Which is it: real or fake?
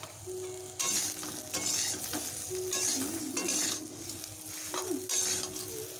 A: real